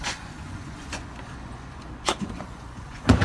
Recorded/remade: remade